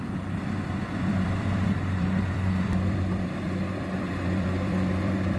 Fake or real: fake